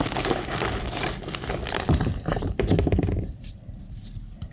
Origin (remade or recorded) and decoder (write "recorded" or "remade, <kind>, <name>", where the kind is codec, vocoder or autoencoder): remade, vocoder, BigVGAN v2